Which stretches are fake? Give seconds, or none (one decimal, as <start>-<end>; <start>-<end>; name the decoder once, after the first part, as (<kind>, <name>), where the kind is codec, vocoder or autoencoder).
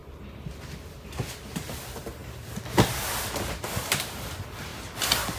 0.0-5.4 (vocoder, BigVGAN v2)